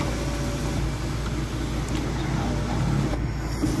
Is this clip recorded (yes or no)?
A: yes